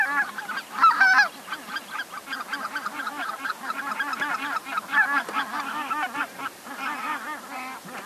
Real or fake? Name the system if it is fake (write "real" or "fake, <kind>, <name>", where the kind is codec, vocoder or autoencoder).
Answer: real